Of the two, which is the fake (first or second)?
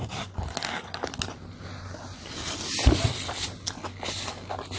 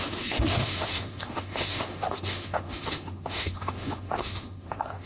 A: second